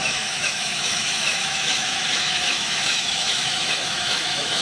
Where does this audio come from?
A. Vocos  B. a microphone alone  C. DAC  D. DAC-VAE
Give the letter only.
D